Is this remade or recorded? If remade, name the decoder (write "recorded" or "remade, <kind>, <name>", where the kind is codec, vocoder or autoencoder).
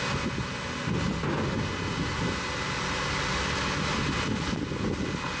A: recorded